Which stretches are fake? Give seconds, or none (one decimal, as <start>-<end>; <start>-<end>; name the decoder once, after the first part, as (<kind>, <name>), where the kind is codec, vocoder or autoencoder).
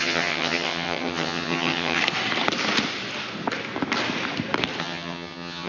0.0-2.0 (vocoder, HiFi-GAN); 4.8-5.7